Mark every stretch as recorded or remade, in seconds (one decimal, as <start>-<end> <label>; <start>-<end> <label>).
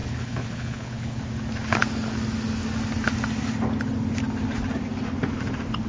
0.0-1.2 remade; 1.2-5.9 recorded